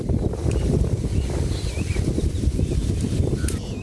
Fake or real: real